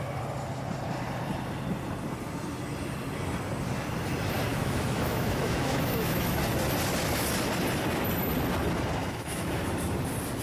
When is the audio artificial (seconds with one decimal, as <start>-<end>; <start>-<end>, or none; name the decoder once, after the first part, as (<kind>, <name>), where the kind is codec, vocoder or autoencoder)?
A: 4.5-6.3 (autoencoder, DAC-VAE); 9.0-9.6